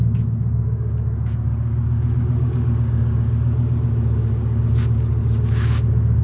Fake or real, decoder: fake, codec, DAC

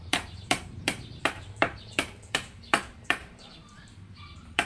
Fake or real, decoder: fake, vocoder, BigVGAN v2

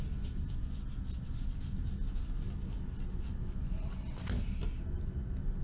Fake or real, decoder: real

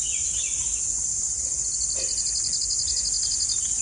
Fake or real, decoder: real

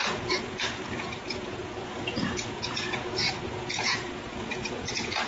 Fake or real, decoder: fake, vocoder, Vocos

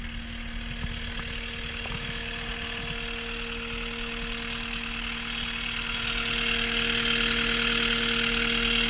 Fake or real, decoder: real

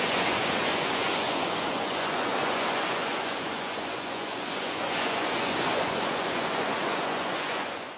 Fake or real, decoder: fake, vocoder, Vocos